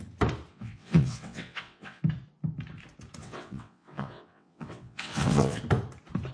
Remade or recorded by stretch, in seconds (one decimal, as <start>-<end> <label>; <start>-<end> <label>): 0.0-0.5 recorded; 0.5-2.0 remade; 2.0-3.2 recorded; 3.2-5.6 remade; 5.6-6.3 recorded